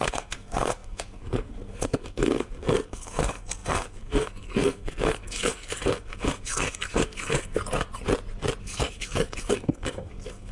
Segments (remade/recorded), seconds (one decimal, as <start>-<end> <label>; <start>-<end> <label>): 0.0-7.6 remade; 7.6-8.6 recorded; 8.6-10.5 remade